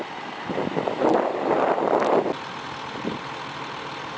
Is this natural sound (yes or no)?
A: yes